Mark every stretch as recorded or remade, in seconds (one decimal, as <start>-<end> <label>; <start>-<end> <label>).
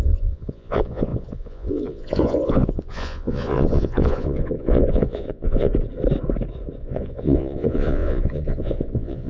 0.0-5.7 remade; 5.7-6.8 recorded; 6.8-9.3 remade